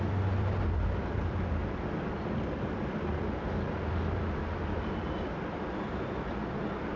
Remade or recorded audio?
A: recorded